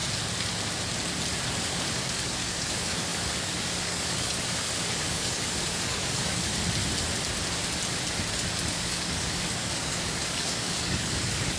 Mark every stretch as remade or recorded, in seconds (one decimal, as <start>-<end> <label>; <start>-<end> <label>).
0.0-1.6 recorded; 1.6-6.5 remade; 6.5-8.7 recorded; 8.7-11.6 remade